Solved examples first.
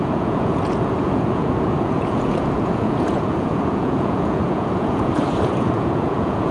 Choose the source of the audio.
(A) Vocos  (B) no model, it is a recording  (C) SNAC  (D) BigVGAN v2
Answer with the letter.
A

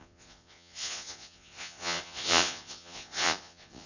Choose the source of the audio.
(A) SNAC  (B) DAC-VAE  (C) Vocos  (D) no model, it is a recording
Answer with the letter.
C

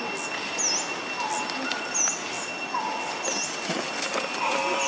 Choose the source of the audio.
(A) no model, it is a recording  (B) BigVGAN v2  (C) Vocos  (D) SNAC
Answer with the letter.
A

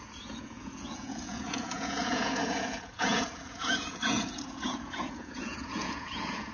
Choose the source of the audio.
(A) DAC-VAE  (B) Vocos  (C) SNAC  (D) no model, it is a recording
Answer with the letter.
B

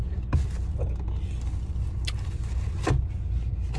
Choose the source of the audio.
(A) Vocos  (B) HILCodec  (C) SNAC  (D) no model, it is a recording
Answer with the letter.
D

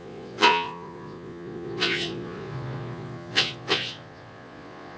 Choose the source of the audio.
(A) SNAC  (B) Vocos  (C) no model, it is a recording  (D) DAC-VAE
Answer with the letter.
B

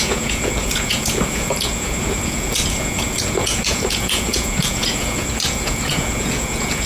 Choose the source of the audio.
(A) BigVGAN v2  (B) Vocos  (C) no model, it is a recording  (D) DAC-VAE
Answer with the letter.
B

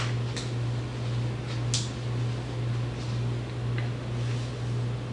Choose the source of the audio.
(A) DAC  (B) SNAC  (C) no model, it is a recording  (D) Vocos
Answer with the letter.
C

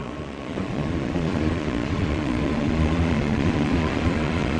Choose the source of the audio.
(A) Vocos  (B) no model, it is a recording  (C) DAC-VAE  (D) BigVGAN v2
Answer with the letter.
A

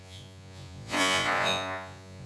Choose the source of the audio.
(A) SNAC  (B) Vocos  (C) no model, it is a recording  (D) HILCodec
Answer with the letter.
B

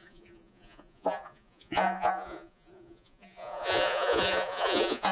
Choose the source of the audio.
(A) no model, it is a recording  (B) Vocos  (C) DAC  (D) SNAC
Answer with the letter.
B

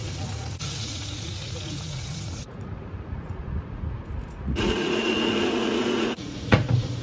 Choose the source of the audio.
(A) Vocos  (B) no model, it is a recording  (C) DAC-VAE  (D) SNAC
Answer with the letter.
A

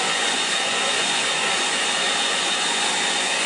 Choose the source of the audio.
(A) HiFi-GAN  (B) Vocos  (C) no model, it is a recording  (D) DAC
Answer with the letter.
B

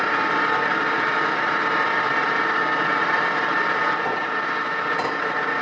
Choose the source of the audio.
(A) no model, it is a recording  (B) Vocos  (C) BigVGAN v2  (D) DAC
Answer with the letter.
A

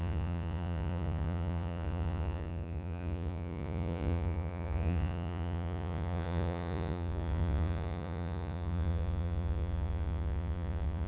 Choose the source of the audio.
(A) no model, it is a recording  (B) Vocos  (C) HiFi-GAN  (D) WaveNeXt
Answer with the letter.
B